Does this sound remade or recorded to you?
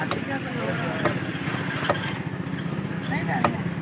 recorded